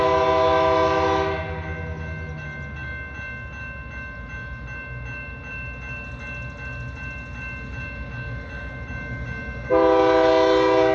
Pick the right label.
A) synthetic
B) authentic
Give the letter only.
B